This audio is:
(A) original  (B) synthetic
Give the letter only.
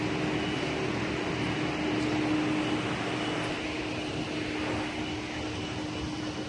A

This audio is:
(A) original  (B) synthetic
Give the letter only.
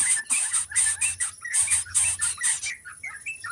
A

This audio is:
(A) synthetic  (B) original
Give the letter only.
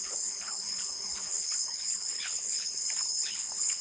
A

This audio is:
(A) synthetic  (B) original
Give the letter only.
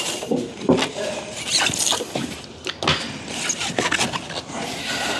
B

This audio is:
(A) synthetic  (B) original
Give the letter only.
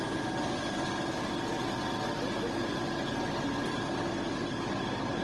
B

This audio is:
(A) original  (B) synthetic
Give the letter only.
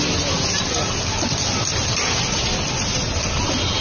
A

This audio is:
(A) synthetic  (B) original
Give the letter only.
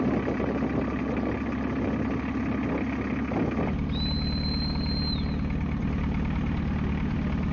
B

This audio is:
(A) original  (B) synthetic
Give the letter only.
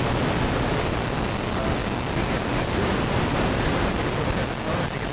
A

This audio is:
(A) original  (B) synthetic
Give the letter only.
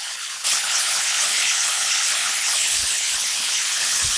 B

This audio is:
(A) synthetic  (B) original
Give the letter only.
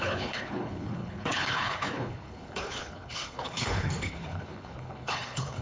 A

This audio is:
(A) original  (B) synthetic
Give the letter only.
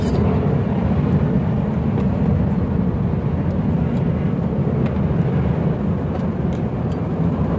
A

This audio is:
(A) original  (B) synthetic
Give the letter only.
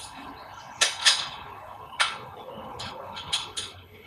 B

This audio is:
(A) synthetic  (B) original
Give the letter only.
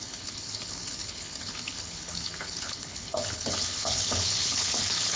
A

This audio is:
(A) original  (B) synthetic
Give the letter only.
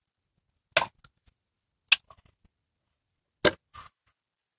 A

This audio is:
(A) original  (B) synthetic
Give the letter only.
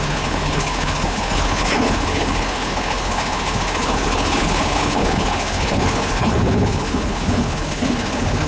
B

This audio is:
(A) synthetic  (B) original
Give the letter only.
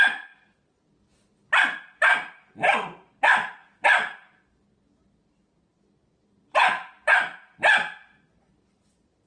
B